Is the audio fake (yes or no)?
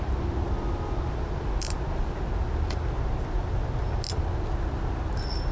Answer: no